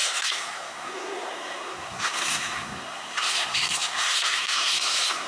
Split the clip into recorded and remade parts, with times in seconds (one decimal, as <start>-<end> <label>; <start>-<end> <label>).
0.0-5.3 remade